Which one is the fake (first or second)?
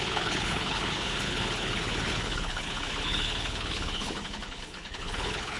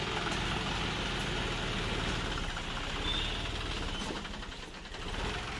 first